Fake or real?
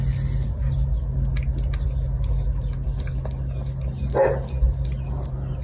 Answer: real